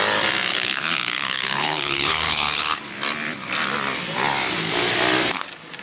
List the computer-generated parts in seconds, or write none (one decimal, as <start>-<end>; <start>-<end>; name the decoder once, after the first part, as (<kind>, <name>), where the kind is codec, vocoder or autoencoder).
0.5-2.8 (codec, HILCodec)

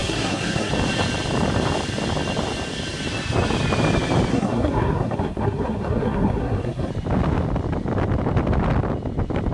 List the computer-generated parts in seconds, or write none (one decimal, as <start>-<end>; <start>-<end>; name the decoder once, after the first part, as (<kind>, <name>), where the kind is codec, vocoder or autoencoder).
0.0-0.7 (codec, SNAC); 4.3-6.9

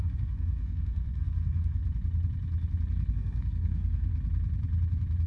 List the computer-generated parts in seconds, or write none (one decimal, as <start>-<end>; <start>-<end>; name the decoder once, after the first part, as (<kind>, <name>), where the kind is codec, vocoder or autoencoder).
0.0-1.8 (codec, SNAC); 3.1-4.1

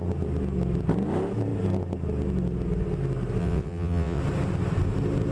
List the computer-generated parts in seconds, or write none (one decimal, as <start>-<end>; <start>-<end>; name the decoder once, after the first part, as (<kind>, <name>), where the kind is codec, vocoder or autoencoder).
3.4-4.2 (vocoder, WaveNeXt)